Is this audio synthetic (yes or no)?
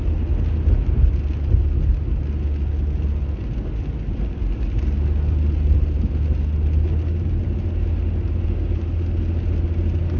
no